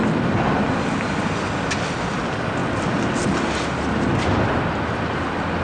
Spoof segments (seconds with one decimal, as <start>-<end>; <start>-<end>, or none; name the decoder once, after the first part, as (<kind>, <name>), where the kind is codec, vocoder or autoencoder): none